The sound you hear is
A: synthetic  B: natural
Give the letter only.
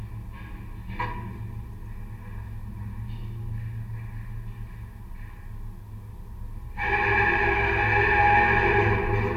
B